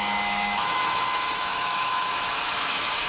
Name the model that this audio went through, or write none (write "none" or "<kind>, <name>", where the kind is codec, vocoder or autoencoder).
autoencoder, DAC-VAE